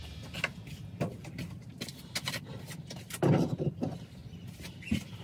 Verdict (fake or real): real